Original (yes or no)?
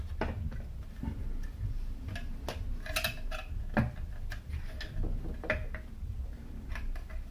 yes